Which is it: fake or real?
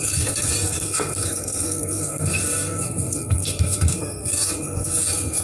fake